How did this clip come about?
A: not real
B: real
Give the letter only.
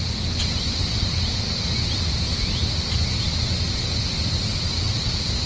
B